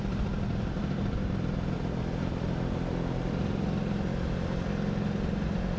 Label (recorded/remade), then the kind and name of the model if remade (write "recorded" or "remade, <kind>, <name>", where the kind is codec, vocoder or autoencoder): recorded